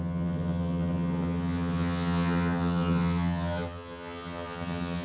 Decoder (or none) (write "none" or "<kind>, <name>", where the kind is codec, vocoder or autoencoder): vocoder, HiFi-GAN